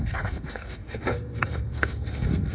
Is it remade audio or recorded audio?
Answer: remade